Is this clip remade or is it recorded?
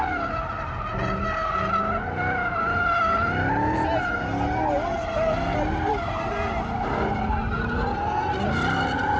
recorded